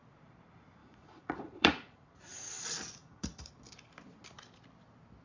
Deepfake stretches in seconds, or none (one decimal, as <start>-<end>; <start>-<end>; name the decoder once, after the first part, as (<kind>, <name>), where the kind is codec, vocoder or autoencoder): 0.8-2.6 (vocoder, Vocos); 3.0-3.5